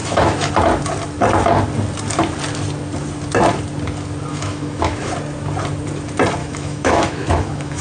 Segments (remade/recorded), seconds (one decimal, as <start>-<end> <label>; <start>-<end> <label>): 0.0-0.5 remade; 0.5-4.3 recorded; 4.3-5.1 remade; 5.1-6.4 recorded; 6.4-7.8 remade